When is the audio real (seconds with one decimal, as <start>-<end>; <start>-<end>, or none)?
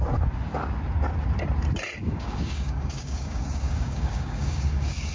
0.0-2.0